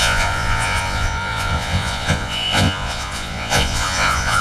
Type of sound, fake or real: fake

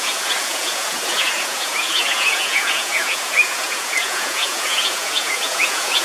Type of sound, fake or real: fake